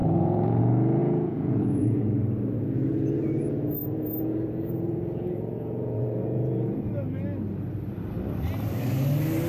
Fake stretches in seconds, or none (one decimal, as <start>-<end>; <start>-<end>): 0.0-0.6; 1.0-2.0; 3.8-6.9